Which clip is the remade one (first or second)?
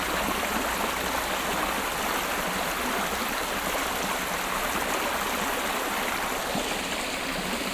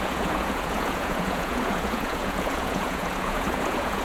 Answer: second